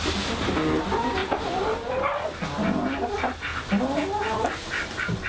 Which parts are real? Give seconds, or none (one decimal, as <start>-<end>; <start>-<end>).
0.0-5.3